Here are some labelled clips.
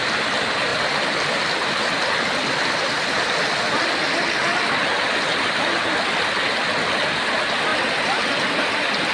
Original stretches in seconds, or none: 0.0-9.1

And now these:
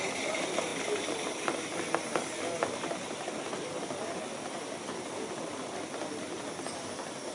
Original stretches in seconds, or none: 0.0-7.3

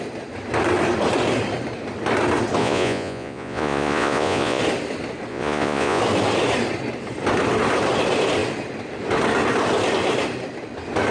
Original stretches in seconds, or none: 0.0-2.6; 4.6-5.3; 6.0-11.1